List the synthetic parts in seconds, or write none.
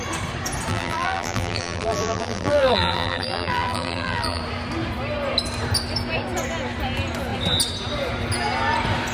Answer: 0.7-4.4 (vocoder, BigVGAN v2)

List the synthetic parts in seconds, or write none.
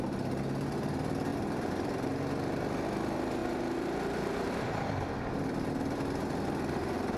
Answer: 1.3-2.2 (vocoder, BigVGAN v2); 3.4-7.2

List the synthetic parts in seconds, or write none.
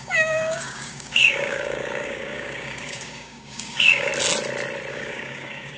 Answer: 0.0-4.1 (codec, DAC); 4.9-5.8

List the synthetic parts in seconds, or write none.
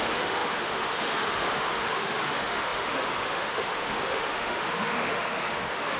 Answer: 0.0-6.0 (autoencoder, DAC-VAE)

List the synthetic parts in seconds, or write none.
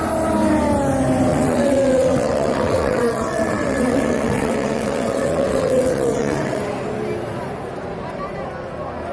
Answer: 1.3-6.6 (vocoder, WaveNeXt)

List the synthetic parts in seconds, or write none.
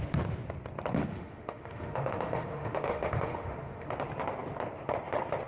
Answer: 1.1-3.9 (autoencoder, DAC-VAE)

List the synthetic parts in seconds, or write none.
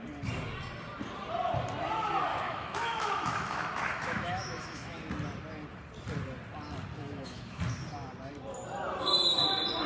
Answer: 2.3-5.0 (autoencoder, DAC-VAE); 7.0-7.6